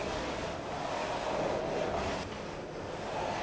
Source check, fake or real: real